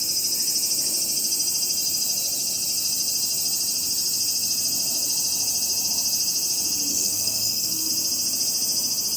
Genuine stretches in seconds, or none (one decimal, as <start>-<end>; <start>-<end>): 0.0-6.9; 7.9-9.2